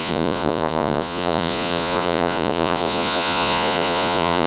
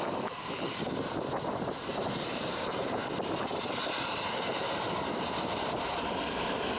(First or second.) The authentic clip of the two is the second